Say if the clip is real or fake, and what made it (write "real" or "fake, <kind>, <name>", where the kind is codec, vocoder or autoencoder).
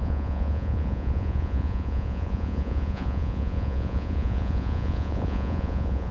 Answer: fake, vocoder, Vocos